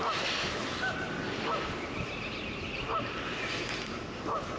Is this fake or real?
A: real